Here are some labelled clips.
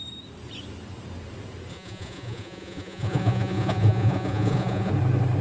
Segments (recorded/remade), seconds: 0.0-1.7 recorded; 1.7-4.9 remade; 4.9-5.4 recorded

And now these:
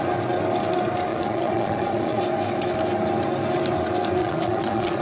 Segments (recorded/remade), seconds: 0.0-1.1 recorded; 1.1-2.2 remade; 2.2-4.2 recorded; 4.2-5.0 remade

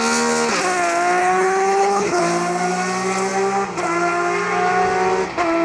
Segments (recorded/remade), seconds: 0.0-1.2 recorded; 1.2-2.2 remade; 2.2-5.6 recorded

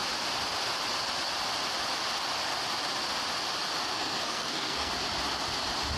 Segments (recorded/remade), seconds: 0.0-3.9 recorded; 3.9-4.9 remade; 4.9-6.0 recorded

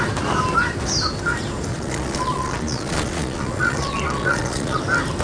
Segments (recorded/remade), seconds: 0.0-1.7 recorded; 1.7-4.8 remade; 4.8-5.2 recorded

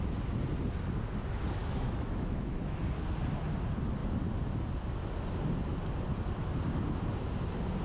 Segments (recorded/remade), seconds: 0.0-1.6 recorded; 1.6-2.8 remade; 2.8-7.8 recorded

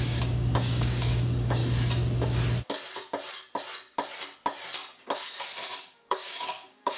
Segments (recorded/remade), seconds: 0.0-1.6 remade; 1.6-5.8 recorded; 5.8-7.0 remade

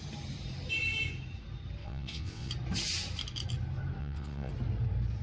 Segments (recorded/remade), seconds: 0.0-1.8 recorded; 1.8-2.5 remade; 2.5-4.0 recorded; 4.0-4.5 remade; 4.5-5.2 recorded